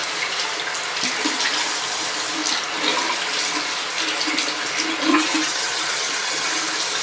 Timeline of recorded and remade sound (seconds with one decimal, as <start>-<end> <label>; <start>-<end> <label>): 0.0-5.1 recorded; 5.1-6.5 remade; 6.5-7.0 recorded